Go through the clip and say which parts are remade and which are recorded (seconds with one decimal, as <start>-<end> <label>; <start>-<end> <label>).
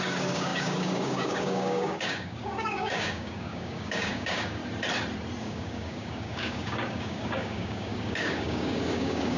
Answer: 0.0-4.6 remade; 4.6-5.4 recorded; 5.4-9.4 remade